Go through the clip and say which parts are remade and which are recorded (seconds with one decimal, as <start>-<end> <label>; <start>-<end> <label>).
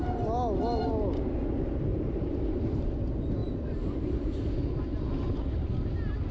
0.0-1.9 recorded; 1.9-2.4 remade; 2.4-3.4 recorded; 3.4-4.3 remade; 4.3-6.3 recorded